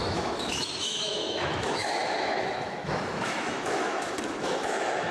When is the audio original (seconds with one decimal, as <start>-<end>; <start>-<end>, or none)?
none

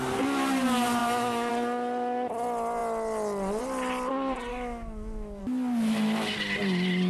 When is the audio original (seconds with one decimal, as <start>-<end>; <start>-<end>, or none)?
0.0-1.0; 1.5-4.5; 5.4-7.1